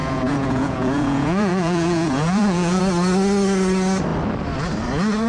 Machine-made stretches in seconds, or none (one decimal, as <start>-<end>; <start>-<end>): 0.0-2.8